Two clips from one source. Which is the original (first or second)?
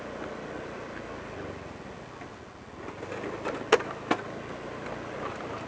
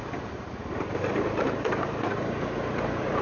first